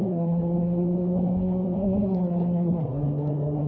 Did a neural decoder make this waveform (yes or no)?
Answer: yes